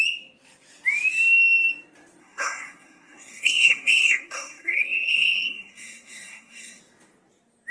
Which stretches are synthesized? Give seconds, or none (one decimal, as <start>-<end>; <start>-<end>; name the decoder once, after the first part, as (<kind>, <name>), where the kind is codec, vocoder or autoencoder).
2.2-6.8 (codec, SNAC)